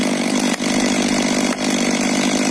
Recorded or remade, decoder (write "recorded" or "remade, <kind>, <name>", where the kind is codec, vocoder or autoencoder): recorded